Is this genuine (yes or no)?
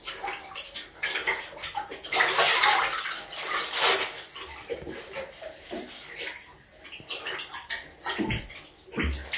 yes